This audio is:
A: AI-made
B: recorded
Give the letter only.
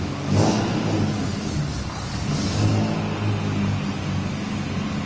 B